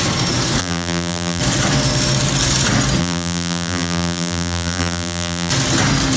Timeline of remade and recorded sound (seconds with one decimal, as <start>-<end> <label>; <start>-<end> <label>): 0.0-0.6 recorded; 0.6-1.4 remade; 1.4-3.0 recorded; 3.0-5.5 remade; 5.5-6.2 recorded